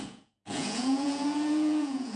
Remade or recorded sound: remade